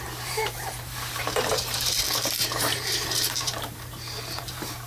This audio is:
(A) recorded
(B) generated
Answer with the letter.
B